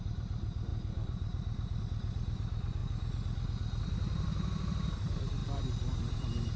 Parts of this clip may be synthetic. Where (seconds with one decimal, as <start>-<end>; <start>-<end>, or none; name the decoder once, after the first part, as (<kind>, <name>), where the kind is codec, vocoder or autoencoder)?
0.0-2.8 (vocoder, BigVGAN v2); 3.8-6.6